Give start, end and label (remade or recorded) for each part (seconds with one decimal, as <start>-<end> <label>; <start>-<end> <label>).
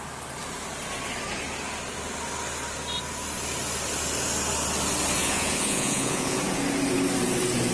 0.0-5.2 recorded; 5.2-6.4 remade; 6.4-7.7 recorded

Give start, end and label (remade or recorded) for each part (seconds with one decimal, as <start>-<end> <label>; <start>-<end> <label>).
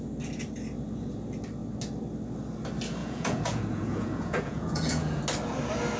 0.0-3.0 recorded; 3.0-5.2 remade; 5.2-6.0 recorded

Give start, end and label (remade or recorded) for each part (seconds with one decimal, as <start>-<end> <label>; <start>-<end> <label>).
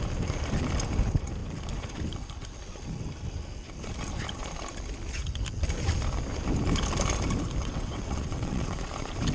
0.0-7.6 recorded; 7.6-8.9 remade; 8.9-9.3 recorded